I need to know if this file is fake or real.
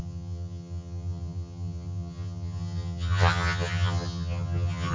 fake